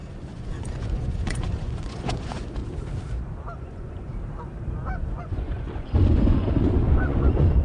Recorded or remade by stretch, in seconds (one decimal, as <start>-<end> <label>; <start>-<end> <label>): 0.0-2.6 remade; 2.6-3.6 recorded; 3.6-4.1 remade; 4.1-4.8 recorded; 4.8-7.6 remade

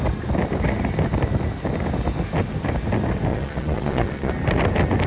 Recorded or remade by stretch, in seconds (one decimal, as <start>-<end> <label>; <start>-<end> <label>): 0.0-3.3 recorded; 3.3-4.3 remade; 4.3-5.1 recorded